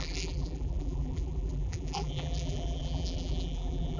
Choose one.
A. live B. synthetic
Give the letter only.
B